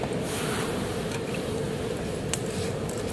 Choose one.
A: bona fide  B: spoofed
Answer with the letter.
A